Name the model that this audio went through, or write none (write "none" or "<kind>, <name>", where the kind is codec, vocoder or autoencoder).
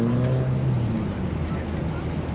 none